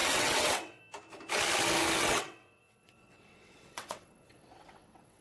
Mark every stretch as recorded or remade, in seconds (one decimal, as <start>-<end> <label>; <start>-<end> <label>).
0.0-0.8 remade; 0.8-2.0 recorded; 2.0-5.2 remade